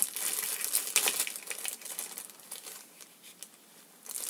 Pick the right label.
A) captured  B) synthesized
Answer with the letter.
A